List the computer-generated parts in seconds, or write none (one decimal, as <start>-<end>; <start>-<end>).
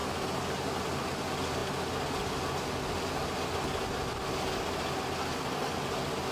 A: none